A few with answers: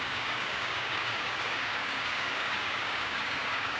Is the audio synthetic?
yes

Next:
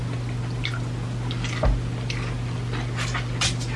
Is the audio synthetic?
no